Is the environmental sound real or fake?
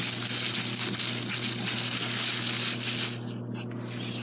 real